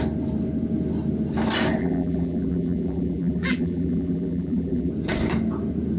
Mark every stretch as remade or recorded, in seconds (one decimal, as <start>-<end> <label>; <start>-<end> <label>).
0.0-1.8 recorded; 1.8-4.9 remade; 4.9-6.0 recorded